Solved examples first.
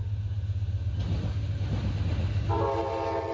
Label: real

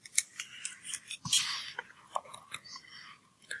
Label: real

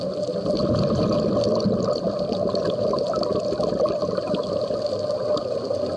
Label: real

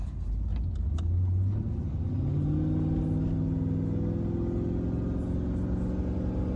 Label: real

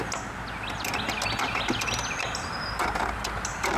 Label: real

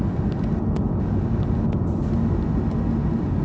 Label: real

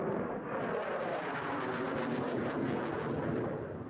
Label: real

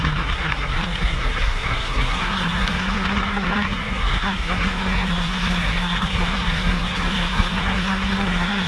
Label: fake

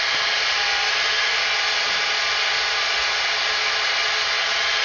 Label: real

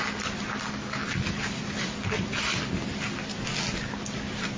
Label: real